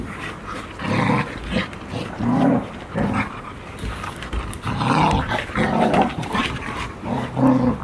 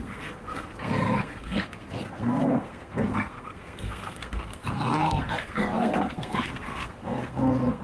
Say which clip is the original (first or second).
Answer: first